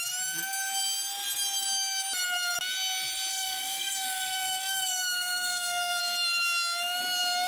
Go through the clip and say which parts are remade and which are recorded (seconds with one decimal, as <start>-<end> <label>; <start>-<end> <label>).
0.0-3.3 recorded; 3.3-6.0 remade; 6.0-7.5 recorded